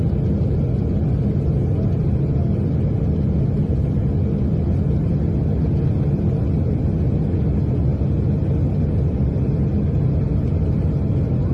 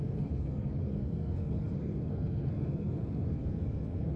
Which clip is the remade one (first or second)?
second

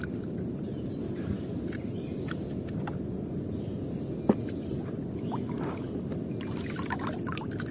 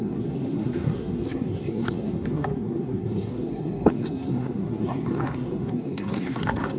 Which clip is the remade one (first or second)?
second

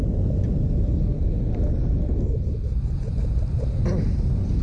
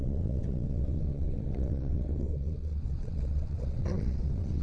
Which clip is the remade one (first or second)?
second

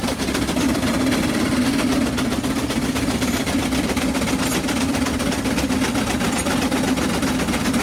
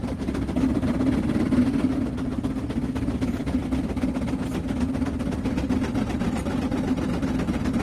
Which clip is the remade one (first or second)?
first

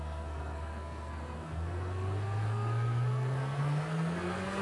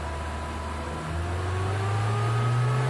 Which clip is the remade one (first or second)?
first